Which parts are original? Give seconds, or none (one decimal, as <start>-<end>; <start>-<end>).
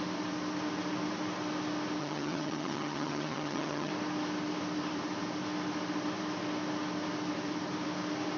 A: 0.0-2.0; 3.9-8.4